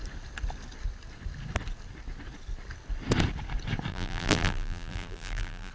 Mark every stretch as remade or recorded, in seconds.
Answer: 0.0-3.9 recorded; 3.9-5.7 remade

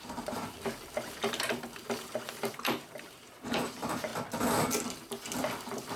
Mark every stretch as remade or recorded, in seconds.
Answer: 0.0-4.1 remade; 4.1-6.0 recorded

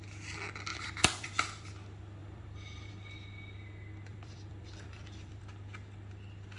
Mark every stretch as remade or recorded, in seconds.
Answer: 0.0-0.7 recorded; 0.7-1.7 remade; 1.7-2.2 recorded; 2.2-2.9 remade; 2.9-4.1 recorded; 4.1-5.4 remade; 5.4-6.6 recorded

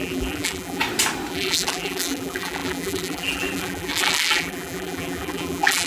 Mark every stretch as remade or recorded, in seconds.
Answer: 0.0-0.8 remade; 0.8-1.3 recorded; 1.3-5.9 remade